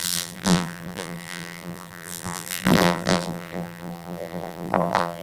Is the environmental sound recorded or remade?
remade